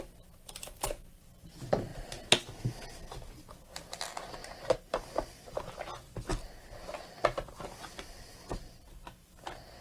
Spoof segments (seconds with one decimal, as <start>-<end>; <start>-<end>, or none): 4.4-5.7